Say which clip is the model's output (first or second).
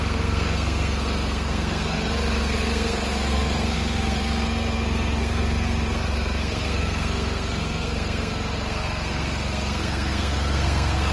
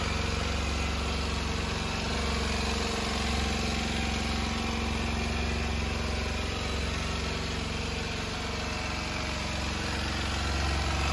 first